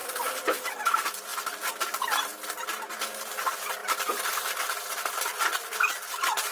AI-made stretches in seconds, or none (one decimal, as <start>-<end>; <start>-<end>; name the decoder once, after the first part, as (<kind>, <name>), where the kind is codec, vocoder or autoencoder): 0.0-1.3 (vocoder, BigVGAN v2); 1.8-3.8; 4.6-6.5